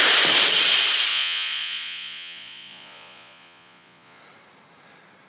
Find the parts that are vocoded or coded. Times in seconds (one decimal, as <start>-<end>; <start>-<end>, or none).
1.1-4.2